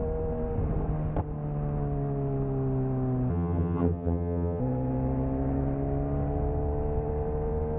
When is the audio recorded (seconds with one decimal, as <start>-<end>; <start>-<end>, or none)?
0.0-3.3; 4.6-7.8